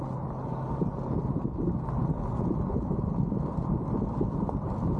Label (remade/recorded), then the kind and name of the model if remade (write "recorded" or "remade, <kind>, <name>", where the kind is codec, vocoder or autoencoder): recorded